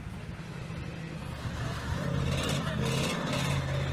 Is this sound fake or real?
real